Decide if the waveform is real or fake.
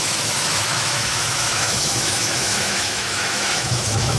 fake